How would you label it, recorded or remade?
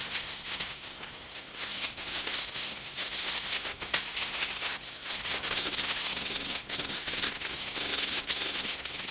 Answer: remade